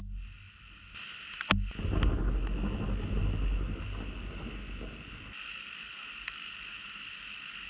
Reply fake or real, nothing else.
real